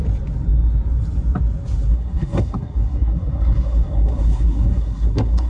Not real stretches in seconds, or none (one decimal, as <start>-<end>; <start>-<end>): 1.9-5.5